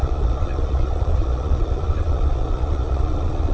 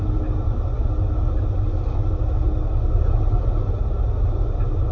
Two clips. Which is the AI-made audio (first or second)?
first